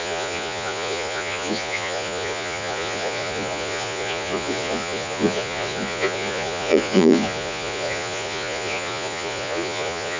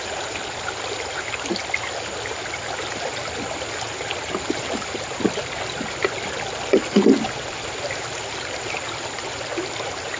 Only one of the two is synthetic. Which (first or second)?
first